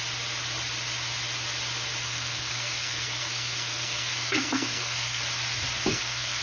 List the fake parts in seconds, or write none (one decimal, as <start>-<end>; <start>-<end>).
2.0-5.2; 5.9-6.4